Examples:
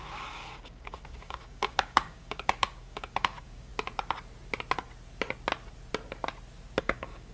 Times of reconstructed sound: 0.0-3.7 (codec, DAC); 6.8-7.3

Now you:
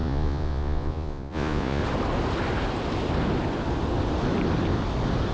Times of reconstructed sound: 0.0-1.8 (vocoder, Vocos)

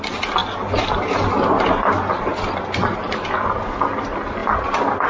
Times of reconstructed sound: none

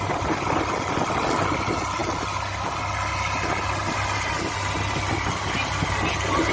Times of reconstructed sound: none

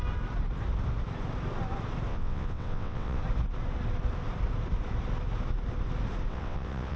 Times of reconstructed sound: 2.1-3.2 (vocoder, WaveNeXt); 6.3-7.0

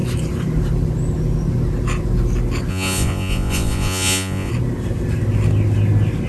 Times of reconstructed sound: 2.7-4.5 (vocoder, Vocos)

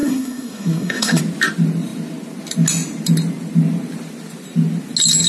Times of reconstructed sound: 0.0-1.2 (codec, SNAC)

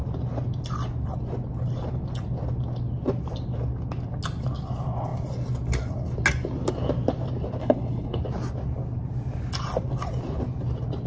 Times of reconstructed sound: 7.6-8.2 (codec, HILCodec)